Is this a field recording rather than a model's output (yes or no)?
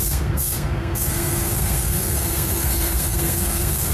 no